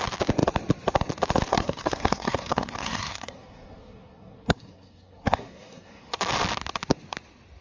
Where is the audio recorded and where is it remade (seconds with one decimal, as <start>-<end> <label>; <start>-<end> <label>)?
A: 0.0-1.5 recorded; 1.5-6.1 remade; 6.1-7.6 recorded